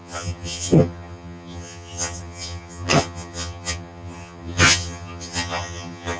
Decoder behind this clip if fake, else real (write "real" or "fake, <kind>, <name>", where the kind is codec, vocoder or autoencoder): fake, vocoder, HiFi-GAN